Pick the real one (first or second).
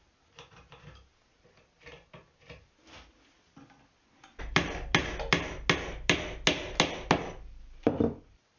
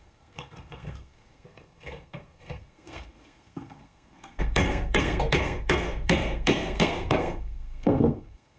first